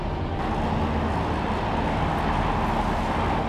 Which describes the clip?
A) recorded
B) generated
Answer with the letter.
A